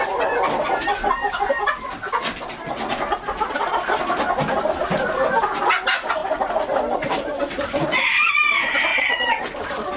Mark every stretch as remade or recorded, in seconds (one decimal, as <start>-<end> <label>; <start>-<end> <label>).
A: 0.0-8.9 recorded; 8.9-9.4 remade; 9.4-10.0 recorded